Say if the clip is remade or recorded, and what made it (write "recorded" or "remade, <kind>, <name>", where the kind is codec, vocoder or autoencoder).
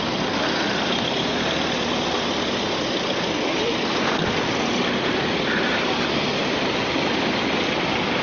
recorded